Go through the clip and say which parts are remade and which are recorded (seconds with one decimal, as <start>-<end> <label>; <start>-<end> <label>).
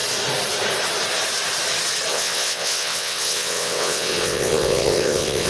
0.0-2.1 recorded; 2.1-5.5 remade